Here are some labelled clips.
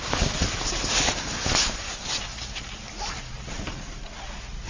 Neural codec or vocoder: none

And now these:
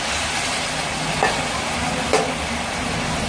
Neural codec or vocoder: none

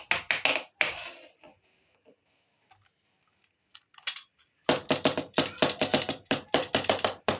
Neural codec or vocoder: none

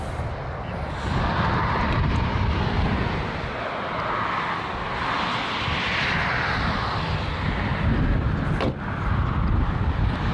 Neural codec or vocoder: none